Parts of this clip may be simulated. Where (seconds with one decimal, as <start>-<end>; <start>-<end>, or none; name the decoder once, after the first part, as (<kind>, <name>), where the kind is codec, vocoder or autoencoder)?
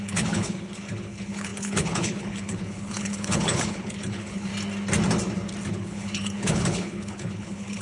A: 0.0-4.5 (codec, HILCodec); 5.7-7.8